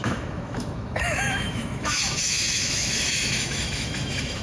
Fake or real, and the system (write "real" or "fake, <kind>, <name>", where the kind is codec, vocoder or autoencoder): fake, autoencoder, DAC-VAE